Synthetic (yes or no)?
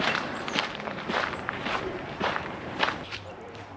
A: yes